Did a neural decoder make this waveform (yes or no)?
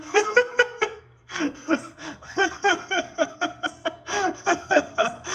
yes